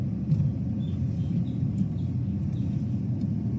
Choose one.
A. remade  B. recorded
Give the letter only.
B